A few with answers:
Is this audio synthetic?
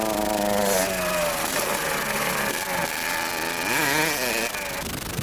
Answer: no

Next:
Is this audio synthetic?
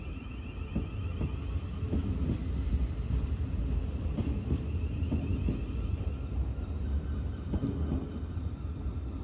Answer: no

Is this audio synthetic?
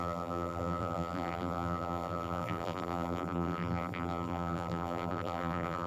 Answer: yes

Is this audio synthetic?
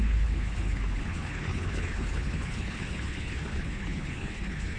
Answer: yes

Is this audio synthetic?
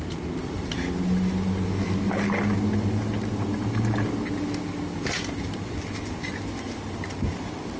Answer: no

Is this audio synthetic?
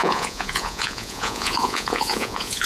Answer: yes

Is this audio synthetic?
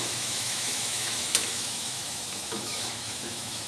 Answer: yes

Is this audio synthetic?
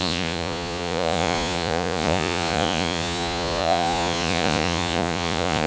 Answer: yes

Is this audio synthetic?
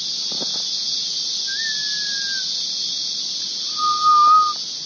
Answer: no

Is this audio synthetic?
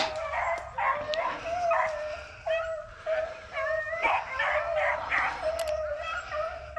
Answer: no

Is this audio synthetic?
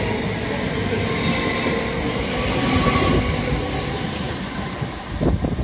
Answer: no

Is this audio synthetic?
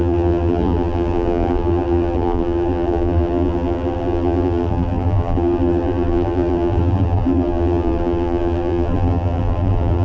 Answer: yes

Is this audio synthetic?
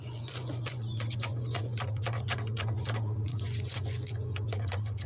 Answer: yes